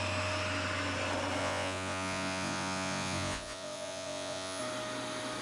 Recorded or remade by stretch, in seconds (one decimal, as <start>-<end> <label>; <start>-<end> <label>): 0.0-1.4 recorded; 1.4-4.6 remade; 4.6-5.4 recorded